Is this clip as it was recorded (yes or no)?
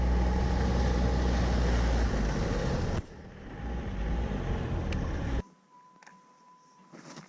yes